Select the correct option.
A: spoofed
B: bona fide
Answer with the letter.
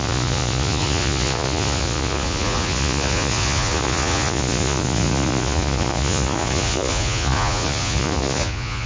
A